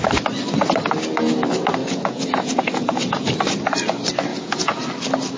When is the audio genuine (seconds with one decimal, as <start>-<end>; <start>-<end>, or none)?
0.0-1.8; 3.3-4.3; 4.9-5.4